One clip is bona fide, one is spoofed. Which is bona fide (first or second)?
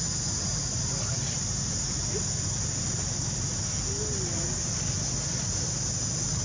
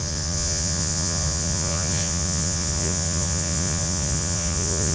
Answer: first